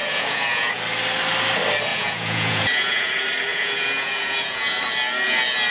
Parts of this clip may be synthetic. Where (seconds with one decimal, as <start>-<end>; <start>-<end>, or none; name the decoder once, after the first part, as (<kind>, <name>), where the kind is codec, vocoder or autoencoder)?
0.0-0.8 (vocoder, Vocos); 1.9-3.1; 3.5-4.8